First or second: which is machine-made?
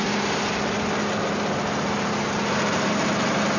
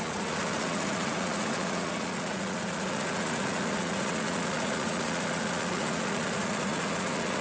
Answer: second